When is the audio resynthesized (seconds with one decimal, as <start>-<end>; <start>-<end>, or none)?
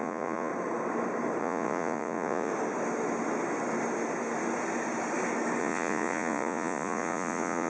0.0-0.5; 1.4-2.5; 5.6-7.7